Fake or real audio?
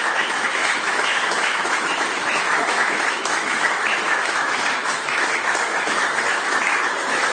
fake